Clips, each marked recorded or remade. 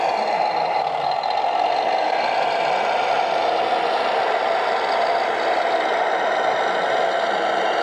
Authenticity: recorded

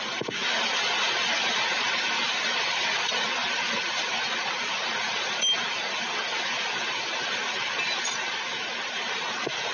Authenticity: recorded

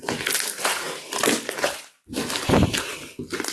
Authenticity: recorded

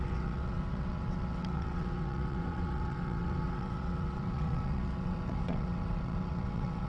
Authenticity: remade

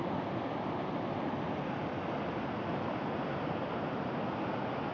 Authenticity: recorded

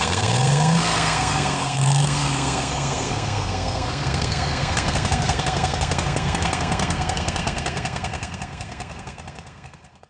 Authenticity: remade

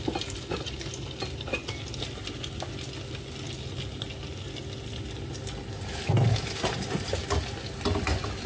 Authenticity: recorded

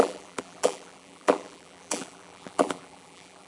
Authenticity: remade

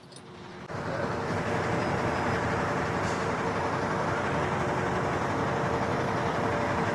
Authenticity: recorded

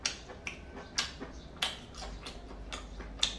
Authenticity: recorded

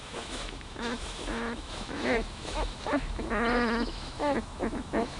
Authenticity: remade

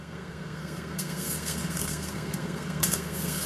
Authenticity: remade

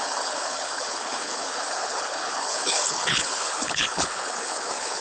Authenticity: remade